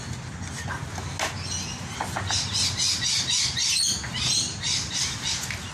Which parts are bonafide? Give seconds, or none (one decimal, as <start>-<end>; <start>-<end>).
0.0-5.7